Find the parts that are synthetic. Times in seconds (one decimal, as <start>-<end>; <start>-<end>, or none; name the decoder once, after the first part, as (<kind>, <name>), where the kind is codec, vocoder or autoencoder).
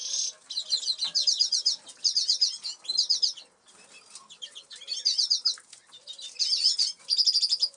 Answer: none